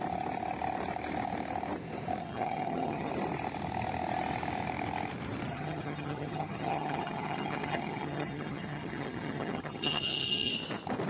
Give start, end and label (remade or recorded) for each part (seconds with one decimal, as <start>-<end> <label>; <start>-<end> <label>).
0.0-2.2 recorded; 2.2-3.1 remade; 3.1-5.5 recorded; 5.5-10.5 remade; 10.5-11.1 recorded